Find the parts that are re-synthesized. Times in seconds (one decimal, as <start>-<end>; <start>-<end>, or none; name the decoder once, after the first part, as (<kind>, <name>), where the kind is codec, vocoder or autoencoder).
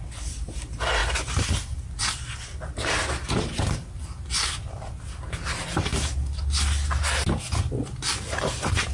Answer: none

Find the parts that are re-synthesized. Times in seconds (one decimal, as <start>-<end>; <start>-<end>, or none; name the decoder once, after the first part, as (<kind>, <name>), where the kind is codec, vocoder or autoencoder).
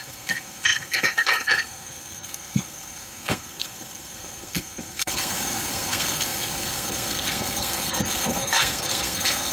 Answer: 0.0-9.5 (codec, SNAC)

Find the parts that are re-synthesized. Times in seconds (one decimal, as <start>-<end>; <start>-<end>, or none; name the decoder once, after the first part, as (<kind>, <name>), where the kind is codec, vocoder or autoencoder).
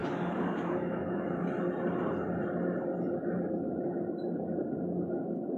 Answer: 0.0-1.5 (codec, DAC)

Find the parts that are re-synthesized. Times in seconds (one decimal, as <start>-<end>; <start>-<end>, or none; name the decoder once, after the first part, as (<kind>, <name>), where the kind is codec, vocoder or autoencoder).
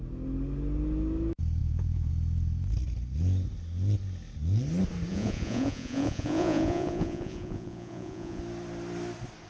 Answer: 1.6-2.1 (vocoder, Vocos); 5.1-8.4